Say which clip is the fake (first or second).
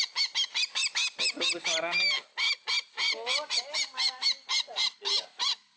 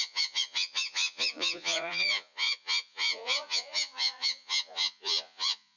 second